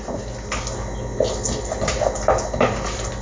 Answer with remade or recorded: recorded